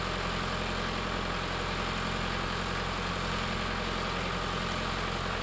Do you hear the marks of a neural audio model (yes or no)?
no